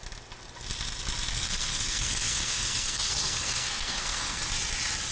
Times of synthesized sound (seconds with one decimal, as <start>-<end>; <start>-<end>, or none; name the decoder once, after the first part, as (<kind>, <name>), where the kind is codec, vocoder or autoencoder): 1.3-4.4 (codec, SNAC)